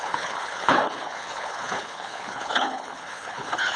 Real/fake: fake